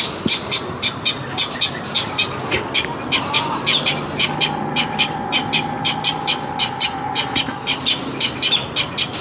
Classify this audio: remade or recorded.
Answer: recorded